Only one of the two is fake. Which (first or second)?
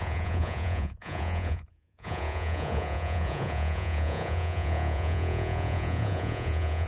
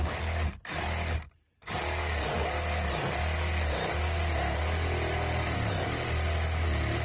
first